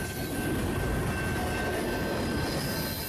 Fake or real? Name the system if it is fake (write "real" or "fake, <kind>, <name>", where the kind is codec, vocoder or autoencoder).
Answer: real